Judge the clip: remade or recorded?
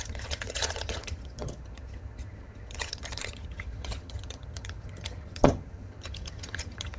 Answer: remade